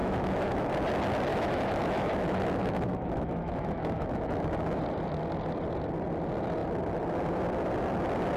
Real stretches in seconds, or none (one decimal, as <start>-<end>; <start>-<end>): 0.7-1.3; 4.5-8.4